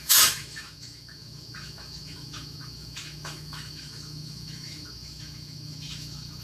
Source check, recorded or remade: remade